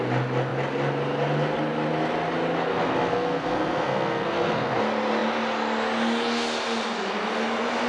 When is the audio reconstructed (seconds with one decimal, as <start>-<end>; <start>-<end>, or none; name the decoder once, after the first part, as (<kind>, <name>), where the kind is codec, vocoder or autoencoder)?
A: 2.7-4.8 (codec, SNAC)